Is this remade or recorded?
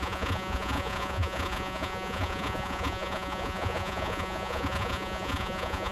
remade